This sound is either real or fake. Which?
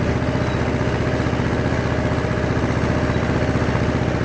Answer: real